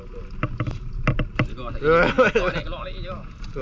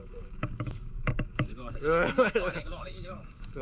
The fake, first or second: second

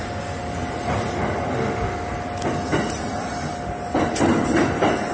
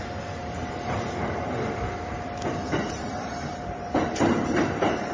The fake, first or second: second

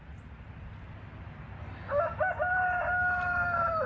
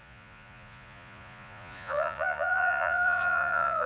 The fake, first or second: second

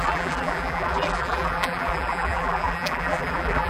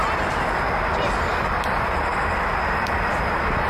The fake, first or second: first